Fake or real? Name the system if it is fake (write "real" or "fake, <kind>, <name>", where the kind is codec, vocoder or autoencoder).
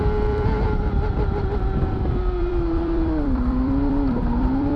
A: fake, vocoder, BigVGAN v2